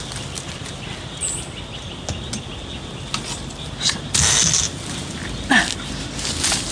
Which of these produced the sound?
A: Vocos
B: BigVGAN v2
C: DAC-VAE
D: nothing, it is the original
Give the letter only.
D